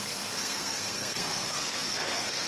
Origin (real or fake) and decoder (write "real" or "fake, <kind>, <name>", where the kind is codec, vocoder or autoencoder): fake, codec, SNAC